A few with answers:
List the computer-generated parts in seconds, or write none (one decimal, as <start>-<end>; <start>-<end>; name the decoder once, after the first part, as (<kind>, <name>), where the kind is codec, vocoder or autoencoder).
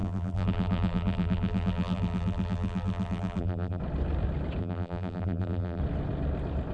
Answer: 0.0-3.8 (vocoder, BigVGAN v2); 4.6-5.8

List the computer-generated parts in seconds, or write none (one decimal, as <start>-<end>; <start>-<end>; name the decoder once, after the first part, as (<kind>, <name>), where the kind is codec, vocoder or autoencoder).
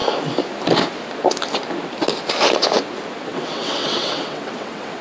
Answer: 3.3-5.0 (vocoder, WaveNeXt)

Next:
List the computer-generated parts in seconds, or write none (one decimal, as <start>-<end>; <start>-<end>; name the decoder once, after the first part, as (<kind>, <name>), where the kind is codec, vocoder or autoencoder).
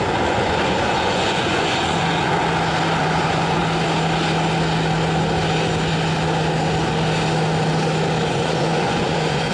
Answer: 0.0-2.4 (vocoder, Vocos); 3.0-3.6; 8.3-9.5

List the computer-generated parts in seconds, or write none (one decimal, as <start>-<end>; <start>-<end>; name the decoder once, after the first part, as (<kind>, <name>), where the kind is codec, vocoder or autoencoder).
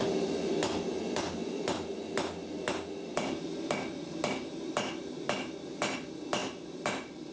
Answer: 0.9-2.1 (vocoder, BigVGAN v2); 6.4-7.3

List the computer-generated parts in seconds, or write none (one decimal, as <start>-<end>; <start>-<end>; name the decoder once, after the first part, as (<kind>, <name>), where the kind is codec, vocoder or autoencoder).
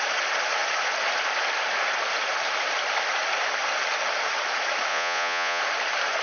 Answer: 4.9-5.6 (vocoder, Vocos)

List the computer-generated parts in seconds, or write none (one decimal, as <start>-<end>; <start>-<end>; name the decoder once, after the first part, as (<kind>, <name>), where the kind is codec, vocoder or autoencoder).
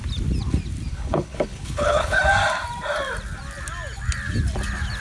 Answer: 0.9-2.2 (codec, HILCodec)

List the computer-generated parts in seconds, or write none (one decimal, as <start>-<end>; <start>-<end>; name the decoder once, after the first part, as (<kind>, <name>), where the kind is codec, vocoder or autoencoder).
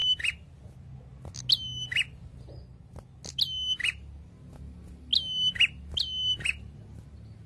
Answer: none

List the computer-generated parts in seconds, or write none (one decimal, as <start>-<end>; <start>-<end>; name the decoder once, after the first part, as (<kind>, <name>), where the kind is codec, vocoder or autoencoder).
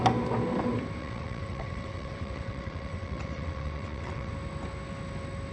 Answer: 1.0-4.3 (vocoder, WaveNeXt)